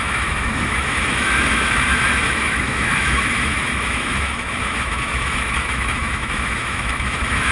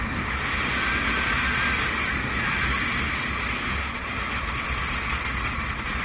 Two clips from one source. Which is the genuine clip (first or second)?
second